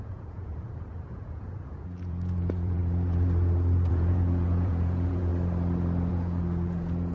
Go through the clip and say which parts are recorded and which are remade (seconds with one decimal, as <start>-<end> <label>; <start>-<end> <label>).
0.0-2.8 remade; 2.8-3.9 recorded; 3.9-5.3 remade; 5.3-6.1 recorded; 6.1-7.1 remade